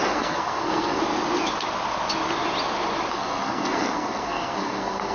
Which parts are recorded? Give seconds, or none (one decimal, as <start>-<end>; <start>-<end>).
1.0-3.1